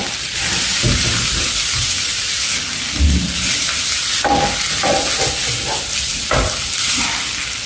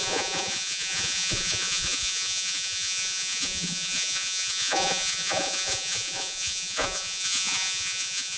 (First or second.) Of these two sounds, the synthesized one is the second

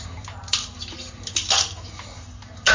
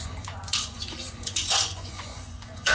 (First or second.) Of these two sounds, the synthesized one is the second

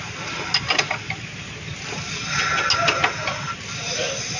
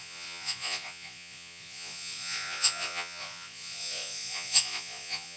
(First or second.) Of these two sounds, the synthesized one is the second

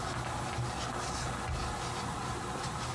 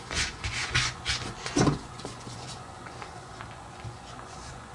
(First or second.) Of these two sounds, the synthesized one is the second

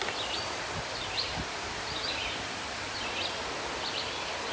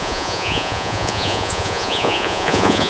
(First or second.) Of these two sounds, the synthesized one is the second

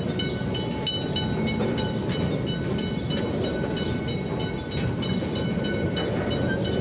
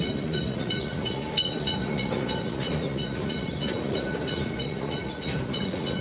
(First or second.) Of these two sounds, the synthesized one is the second